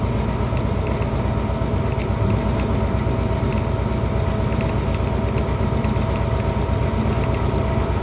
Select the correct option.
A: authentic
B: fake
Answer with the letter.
A